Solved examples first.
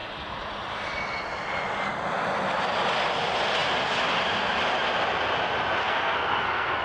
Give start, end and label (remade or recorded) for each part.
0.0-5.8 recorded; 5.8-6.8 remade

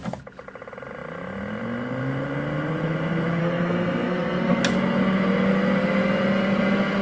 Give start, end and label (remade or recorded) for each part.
0.0-3.4 recorded; 3.4-4.6 remade; 4.6-7.0 recorded

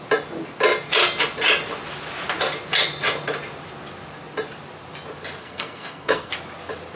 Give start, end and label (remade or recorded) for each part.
0.0-5.4 recorded; 5.4-6.3 remade; 6.3-7.0 recorded

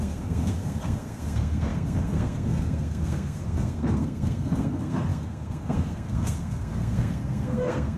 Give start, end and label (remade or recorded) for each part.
0.0-8.0 remade

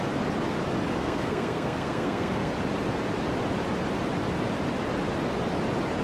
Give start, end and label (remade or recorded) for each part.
0.0-1.0 recorded; 1.0-2.5 remade; 2.5-6.0 recorded

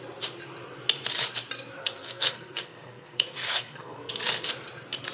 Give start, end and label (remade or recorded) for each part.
0.0-1.8 recorded; 1.8-4.1 remade; 4.1-5.1 recorded

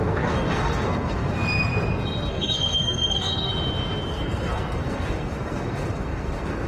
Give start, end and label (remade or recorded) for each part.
0.0-1.7 remade; 1.7-2.3 recorded; 2.3-3.5 remade; 3.5-4.1 recorded; 4.1-6.7 remade